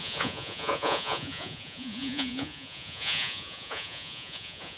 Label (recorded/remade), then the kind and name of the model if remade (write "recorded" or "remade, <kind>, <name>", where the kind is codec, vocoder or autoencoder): remade, vocoder, Vocos